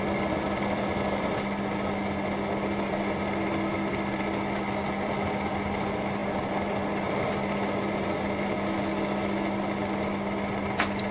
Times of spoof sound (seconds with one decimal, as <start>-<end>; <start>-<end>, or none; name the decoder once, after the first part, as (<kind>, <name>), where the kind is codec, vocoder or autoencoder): none